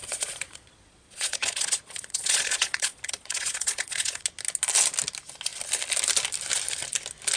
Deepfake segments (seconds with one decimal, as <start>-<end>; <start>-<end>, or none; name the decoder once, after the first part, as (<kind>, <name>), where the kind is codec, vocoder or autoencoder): 0.0-4.2 (vocoder, Vocos)